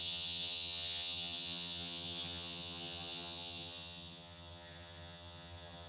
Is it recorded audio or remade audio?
remade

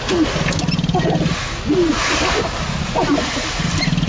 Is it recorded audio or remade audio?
recorded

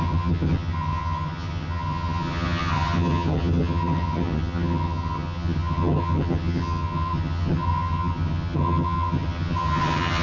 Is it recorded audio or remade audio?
remade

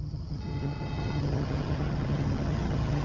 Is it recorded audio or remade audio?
remade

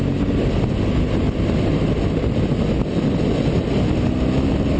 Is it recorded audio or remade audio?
recorded